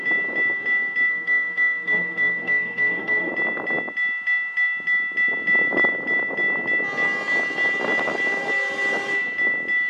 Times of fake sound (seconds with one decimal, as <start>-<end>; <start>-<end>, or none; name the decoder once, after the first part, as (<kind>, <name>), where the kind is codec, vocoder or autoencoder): 1.1-3.3 (autoencoder, DAC-VAE)